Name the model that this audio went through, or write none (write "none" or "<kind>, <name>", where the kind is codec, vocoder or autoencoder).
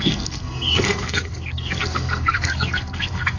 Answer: codec, SNAC